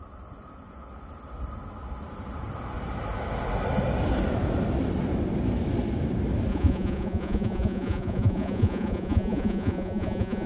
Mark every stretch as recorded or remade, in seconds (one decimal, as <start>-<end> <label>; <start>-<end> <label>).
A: 0.0-6.5 recorded; 6.5-10.5 remade